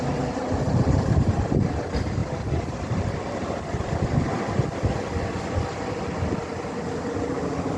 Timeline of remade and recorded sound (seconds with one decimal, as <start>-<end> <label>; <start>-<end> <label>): 0.0-7.8 recorded